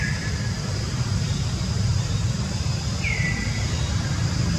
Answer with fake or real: fake